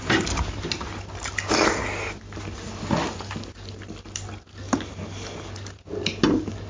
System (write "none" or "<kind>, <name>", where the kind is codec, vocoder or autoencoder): none